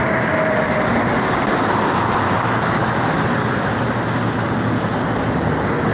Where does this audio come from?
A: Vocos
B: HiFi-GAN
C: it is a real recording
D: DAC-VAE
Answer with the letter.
C